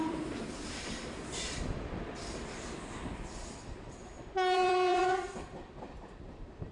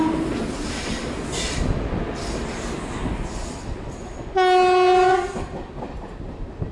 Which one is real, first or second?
second